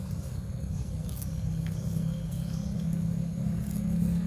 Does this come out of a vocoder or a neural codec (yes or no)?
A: yes